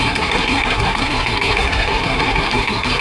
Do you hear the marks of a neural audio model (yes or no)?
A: yes